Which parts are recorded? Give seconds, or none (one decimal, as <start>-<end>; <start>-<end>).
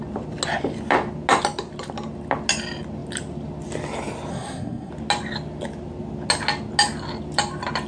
0.0-4.3; 4.9-7.9